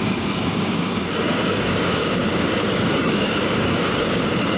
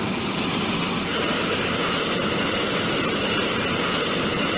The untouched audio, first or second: second